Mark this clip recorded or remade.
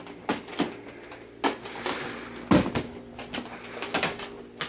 recorded